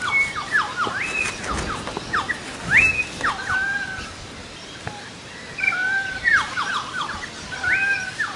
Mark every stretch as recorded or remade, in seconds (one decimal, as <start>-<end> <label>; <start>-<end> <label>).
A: 0.0-8.4 recorded